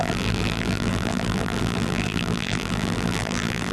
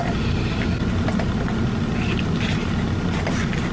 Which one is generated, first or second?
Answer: first